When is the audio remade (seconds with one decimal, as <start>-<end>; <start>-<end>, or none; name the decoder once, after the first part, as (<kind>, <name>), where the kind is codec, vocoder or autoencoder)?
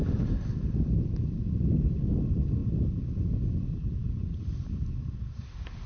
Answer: none